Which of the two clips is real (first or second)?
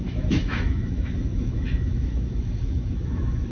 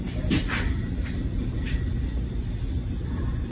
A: second